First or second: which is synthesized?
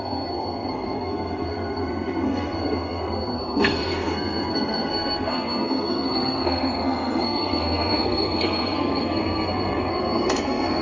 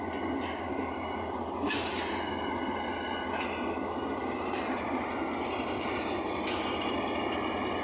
first